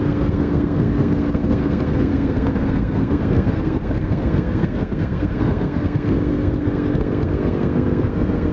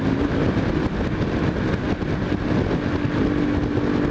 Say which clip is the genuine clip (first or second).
second